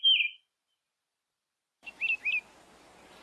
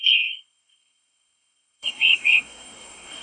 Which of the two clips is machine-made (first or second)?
second